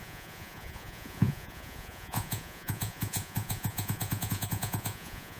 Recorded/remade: remade